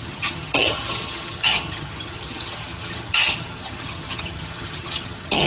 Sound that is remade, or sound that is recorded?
remade